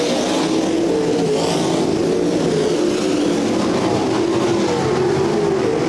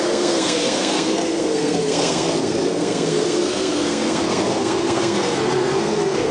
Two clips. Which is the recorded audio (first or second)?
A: first